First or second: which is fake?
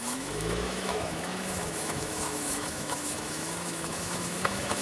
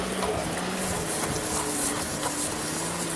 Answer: first